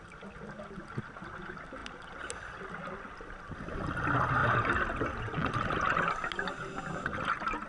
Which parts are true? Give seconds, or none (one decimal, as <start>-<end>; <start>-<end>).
0.0-7.7